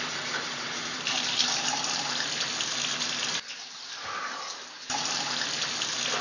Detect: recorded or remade recorded